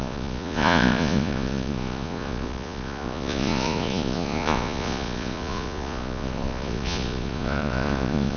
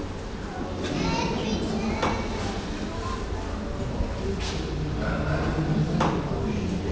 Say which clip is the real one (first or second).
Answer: second